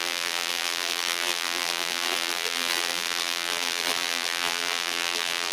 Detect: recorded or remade remade